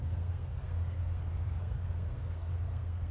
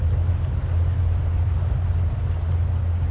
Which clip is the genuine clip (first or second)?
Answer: second